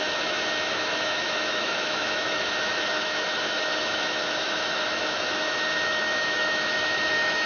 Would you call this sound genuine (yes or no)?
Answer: no